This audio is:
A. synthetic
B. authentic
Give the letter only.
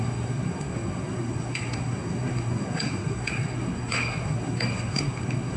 A